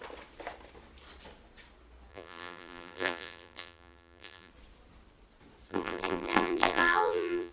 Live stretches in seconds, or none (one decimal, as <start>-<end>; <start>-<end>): 0.0-2.1; 4.5-5.7